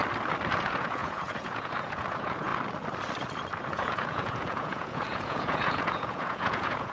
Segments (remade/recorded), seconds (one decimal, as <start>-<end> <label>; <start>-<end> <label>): 0.0-0.6 recorded; 0.6-2.5 remade; 2.5-3.7 recorded; 3.7-6.9 remade